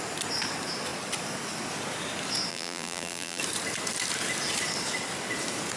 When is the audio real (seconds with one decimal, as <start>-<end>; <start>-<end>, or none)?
0.0-2.5; 3.4-5.8